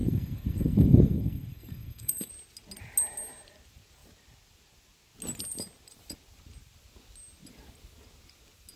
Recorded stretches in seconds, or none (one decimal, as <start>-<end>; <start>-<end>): 2.3-8.8